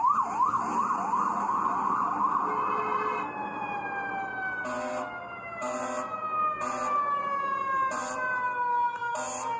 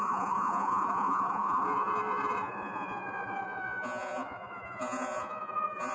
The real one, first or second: first